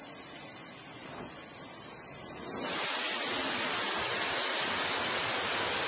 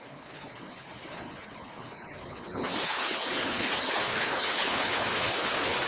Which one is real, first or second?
first